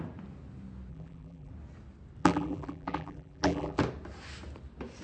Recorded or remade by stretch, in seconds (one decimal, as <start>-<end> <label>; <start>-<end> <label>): 0.0-0.9 recorded; 0.9-1.5 remade; 1.5-2.2 recorded; 2.2-3.8 remade; 3.8-5.0 recorded